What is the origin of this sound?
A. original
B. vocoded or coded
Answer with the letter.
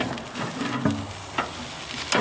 A